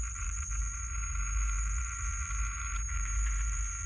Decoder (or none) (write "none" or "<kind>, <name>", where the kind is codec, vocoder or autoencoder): vocoder, BigVGAN v2